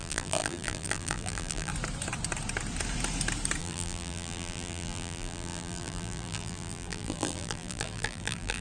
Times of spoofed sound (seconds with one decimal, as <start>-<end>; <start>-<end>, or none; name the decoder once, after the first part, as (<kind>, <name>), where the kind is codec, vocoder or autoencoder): 0.0-1.7 (vocoder, BigVGAN v2); 3.6-8.6